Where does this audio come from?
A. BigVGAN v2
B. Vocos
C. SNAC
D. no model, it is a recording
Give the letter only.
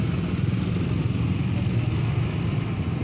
D